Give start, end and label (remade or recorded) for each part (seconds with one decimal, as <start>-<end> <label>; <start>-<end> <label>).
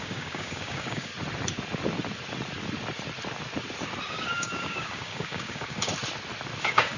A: 0.0-1.1 remade; 1.1-4.1 recorded; 4.1-5.9 remade; 5.9-6.6 recorded; 6.6-7.0 remade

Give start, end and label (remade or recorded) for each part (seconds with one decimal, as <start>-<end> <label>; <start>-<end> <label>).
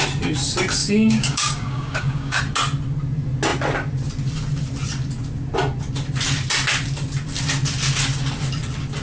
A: 0.0-0.8 recorded; 0.8-2.4 remade; 2.4-9.0 recorded